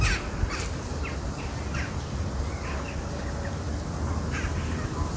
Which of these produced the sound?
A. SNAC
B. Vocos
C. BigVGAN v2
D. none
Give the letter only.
D